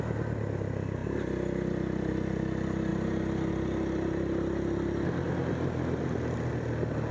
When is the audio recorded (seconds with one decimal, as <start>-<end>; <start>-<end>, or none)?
0.0-7.1